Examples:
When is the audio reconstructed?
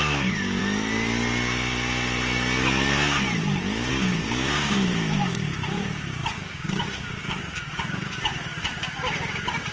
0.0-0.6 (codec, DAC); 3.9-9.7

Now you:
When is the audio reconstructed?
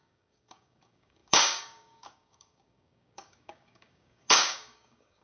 0.0-5.2 (codec, DAC)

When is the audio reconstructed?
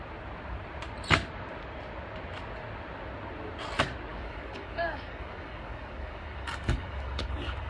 4.1-7.7 (codec, DAC)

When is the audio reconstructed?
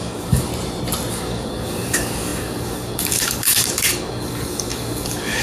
0.0-0.5 (codec, DAC); 1.1-5.4